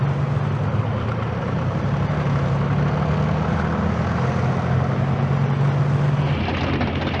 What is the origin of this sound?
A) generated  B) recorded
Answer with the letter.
B